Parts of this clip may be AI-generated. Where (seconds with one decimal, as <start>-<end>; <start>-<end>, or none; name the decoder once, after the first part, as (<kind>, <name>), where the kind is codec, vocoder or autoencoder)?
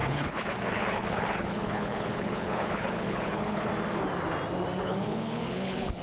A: 0.0-3.7 (codec, HILCodec); 4.8-6.0